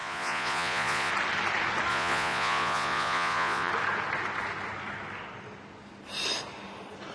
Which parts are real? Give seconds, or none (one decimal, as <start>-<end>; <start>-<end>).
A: 1.1-1.9; 3.7-7.1